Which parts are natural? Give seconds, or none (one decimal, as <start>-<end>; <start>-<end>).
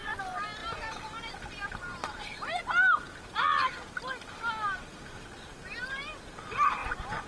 0.0-7.3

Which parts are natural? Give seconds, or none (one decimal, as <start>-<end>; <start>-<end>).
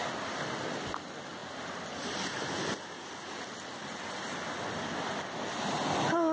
0.0-6.3